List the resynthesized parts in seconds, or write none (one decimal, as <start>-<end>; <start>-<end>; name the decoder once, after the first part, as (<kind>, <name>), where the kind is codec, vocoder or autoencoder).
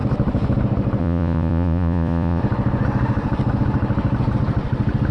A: 1.0-2.4 (vocoder, Vocos)